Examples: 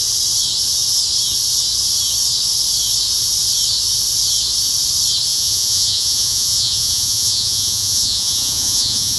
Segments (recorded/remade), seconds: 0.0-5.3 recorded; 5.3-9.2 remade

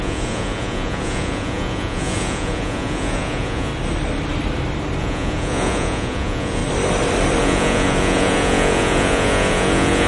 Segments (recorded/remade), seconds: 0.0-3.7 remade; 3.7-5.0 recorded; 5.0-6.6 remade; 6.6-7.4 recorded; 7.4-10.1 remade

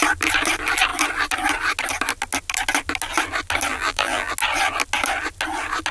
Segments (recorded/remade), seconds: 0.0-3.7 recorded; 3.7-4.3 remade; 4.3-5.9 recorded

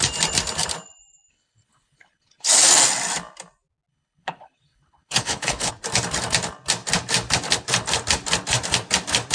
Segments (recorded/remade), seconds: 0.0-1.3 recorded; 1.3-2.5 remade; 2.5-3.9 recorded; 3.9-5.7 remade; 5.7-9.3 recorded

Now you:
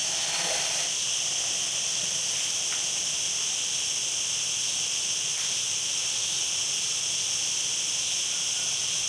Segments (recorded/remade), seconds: 0.0-9.1 recorded

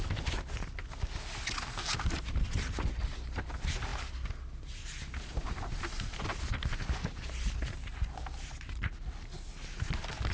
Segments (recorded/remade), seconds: 0.0-10.3 recorded

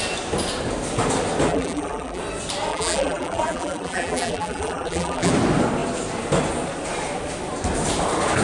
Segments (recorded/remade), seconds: 0.0-1.5 recorded; 1.5-2.2 remade; 2.2-2.7 recorded; 2.7-5.3 remade; 5.3-8.4 recorded